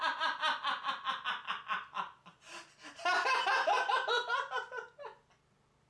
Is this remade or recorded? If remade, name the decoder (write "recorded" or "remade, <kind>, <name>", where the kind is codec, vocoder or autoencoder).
recorded